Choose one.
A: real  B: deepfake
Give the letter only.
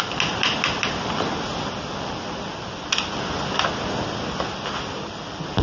A